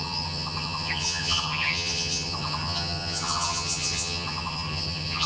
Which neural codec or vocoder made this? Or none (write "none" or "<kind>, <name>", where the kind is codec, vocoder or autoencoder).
vocoder, HiFi-GAN